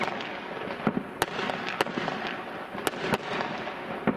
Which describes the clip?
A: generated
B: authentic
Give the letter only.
B